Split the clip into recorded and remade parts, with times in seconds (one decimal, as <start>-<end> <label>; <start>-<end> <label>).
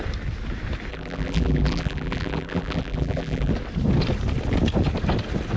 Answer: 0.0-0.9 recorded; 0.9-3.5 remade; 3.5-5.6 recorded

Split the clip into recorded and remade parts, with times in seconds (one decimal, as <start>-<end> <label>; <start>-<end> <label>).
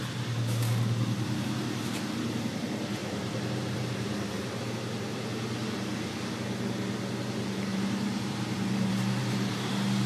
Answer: 0.0-3.0 recorded; 3.0-4.7 remade; 4.7-7.7 recorded; 7.7-9.7 remade; 9.7-10.1 recorded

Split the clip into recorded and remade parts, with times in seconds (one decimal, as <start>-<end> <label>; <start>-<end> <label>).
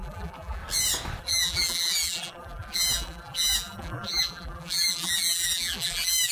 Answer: 0.0-0.6 remade; 0.6-1.2 recorded; 1.2-6.3 remade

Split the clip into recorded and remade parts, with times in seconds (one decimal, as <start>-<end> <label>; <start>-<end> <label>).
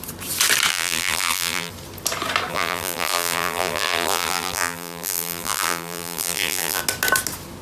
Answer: 0.0-0.7 recorded; 0.7-1.7 remade; 1.7-2.5 recorded; 2.5-6.8 remade; 6.8-7.6 recorded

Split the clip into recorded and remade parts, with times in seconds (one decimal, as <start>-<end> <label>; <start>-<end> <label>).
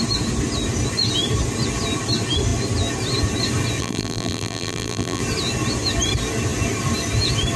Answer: 0.0-3.8 recorded; 3.8-5.2 remade; 5.2-7.6 recorded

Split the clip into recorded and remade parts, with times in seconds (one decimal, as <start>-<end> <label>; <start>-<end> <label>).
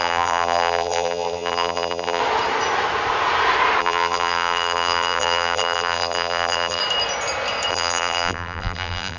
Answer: 0.0-2.2 remade; 2.2-3.8 recorded; 3.8-6.8 remade; 6.8-7.7 recorded; 7.7-9.2 remade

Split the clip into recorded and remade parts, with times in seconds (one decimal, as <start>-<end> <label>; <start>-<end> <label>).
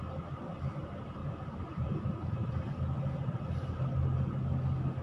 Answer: 0.0-1.2 recorded; 1.2-2.5 remade; 2.5-5.0 recorded